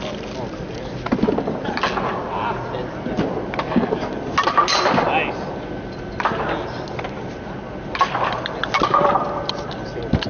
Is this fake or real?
real